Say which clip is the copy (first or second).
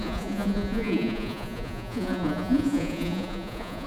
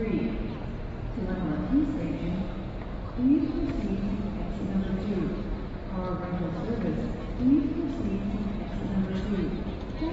first